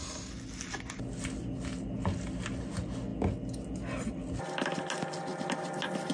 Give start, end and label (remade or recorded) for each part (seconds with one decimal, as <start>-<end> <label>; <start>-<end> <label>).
0.0-6.1 recorded